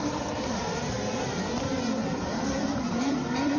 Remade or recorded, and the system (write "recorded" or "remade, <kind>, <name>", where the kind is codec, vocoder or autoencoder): remade, vocoder, BigVGAN v2